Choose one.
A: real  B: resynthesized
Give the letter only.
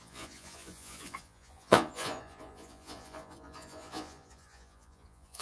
B